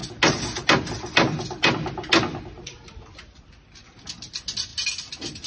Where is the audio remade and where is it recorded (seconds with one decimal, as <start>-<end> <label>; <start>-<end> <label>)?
0.0-5.5 recorded